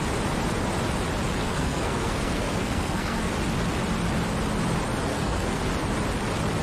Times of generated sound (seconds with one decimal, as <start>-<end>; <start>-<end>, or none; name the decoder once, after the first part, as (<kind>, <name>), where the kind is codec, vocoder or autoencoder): 1.4-3.3 (codec, SNAC); 5.1-5.6